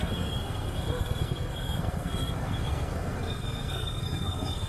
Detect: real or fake fake